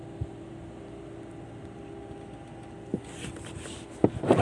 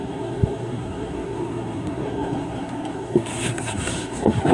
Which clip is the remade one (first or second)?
second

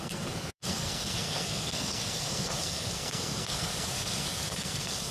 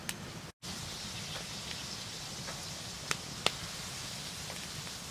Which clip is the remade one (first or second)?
first